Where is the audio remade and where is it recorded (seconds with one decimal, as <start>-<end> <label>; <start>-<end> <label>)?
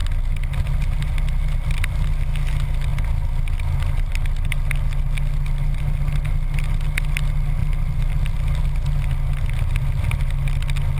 0.0-7.6 recorded; 7.6-8.4 remade; 8.4-11.0 recorded